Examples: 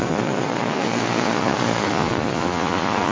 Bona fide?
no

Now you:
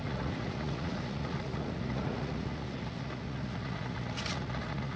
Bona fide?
no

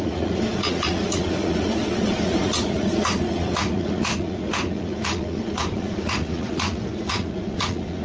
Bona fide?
no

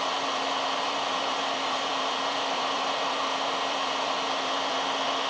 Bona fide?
no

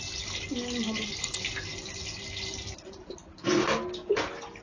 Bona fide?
yes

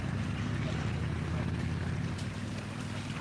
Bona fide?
yes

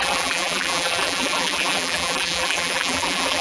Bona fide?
no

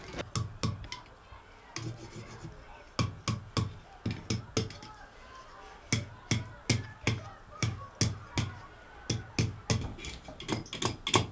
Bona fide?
yes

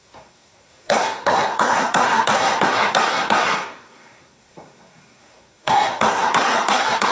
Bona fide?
no